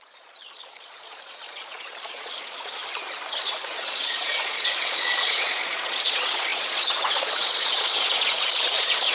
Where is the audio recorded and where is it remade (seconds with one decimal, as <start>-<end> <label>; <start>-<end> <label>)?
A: 0.0-2.8 remade; 2.8-3.4 recorded; 3.4-9.1 remade